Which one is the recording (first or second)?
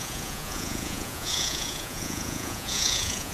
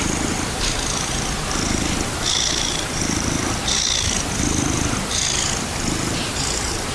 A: second